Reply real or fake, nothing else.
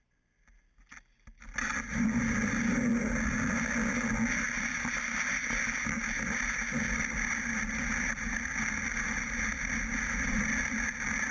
real